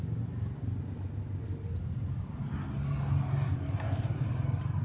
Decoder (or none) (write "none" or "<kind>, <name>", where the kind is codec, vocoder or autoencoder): none